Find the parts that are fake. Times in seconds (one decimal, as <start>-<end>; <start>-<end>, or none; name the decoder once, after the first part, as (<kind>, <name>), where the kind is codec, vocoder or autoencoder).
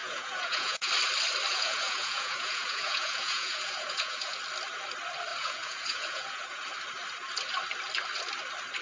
0.0-0.9 (vocoder, Vocos); 1.5-4.4; 5.3-6.6